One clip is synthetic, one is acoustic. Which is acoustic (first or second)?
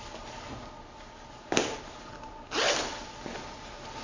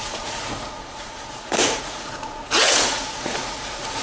first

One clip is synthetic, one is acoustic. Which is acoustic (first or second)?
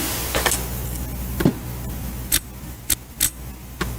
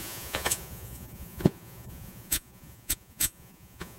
first